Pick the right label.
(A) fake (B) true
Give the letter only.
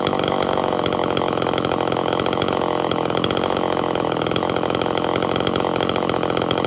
A